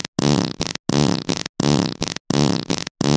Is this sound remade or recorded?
recorded